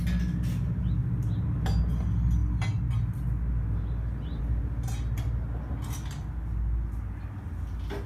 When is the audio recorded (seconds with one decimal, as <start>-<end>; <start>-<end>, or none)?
0.0-8.1